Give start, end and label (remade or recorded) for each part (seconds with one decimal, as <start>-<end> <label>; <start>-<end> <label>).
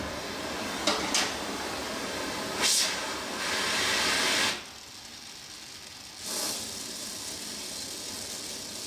0.0-8.9 recorded